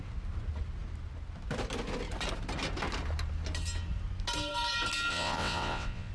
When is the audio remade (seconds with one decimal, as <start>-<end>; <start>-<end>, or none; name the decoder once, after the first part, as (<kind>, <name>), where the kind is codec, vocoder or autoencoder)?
5.1-6.1 (vocoder, WaveNeXt)